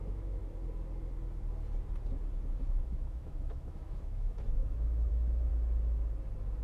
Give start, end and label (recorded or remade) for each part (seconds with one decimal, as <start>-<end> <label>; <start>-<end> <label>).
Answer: 0.0-0.4 remade; 0.4-2.6 recorded; 2.6-5.5 remade; 5.5-6.6 recorded